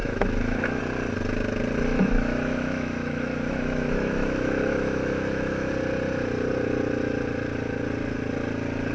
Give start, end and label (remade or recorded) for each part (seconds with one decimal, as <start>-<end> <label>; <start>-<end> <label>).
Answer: 0.0-0.8 remade; 0.8-1.9 recorded; 1.9-5.7 remade; 5.7-8.9 recorded